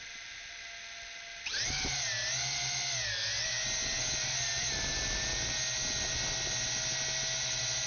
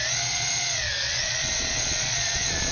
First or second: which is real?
first